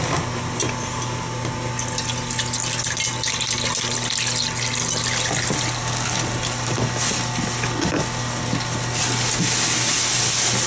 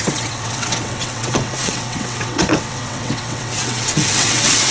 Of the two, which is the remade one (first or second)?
second